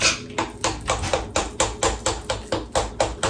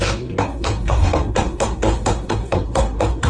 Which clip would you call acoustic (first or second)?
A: first